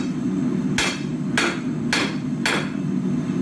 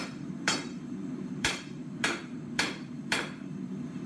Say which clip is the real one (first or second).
first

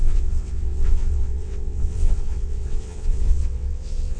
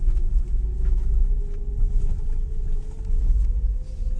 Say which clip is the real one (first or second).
second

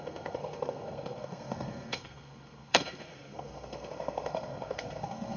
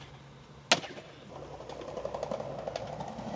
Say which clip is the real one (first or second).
second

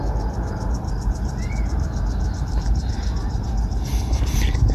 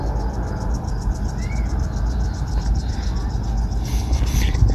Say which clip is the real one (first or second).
second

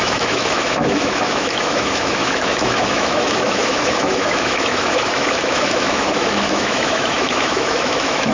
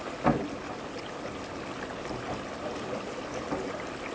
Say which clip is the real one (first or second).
second